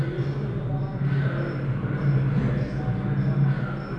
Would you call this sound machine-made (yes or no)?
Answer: no